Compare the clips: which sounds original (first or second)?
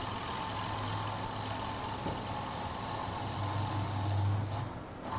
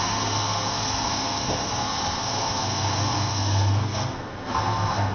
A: first